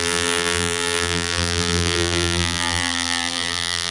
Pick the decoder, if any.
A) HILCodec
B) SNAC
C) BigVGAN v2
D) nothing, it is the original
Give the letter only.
C